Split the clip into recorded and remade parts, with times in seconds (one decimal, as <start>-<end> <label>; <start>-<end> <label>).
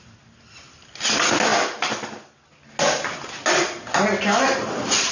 0.0-5.1 recorded